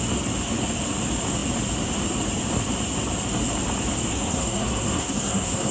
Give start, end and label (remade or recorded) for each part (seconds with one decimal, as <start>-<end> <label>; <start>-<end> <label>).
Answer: 0.0-4.1 recorded; 4.1-5.7 remade